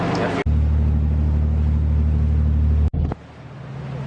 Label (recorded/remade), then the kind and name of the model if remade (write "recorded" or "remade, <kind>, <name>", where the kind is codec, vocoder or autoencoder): recorded